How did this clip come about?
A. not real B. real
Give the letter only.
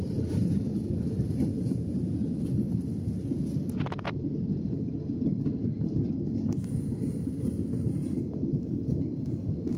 B